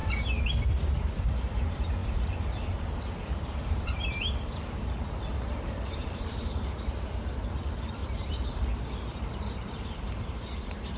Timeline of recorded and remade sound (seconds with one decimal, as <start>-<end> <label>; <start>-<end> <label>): 0.0-1.2 recorded; 1.2-8.0 remade; 8.0-9.1 recorded; 9.1-11.0 remade